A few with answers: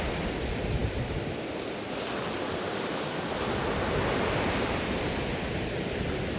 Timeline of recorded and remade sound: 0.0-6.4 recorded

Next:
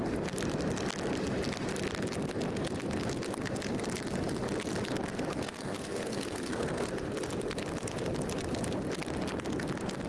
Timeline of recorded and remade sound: 0.0-5.3 recorded; 5.3-6.9 remade; 6.9-10.1 recorded

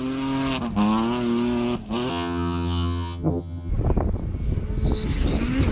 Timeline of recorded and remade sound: 0.0-2.1 recorded; 2.1-3.7 remade; 3.7-5.7 recorded

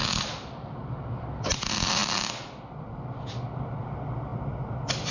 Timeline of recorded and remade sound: 0.0-5.1 recorded

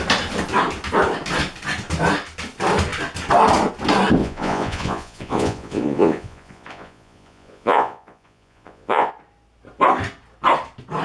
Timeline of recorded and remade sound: 0.0-4.2 recorded; 4.2-9.1 remade; 9.1-11.0 recorded